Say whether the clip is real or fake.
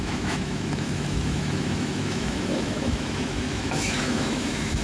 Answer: fake